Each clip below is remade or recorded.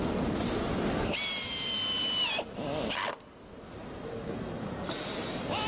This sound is recorded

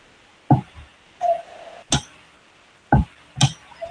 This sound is recorded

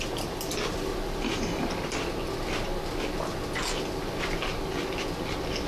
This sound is recorded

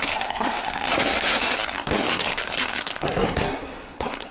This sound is remade